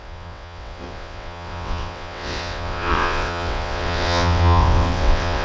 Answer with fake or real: fake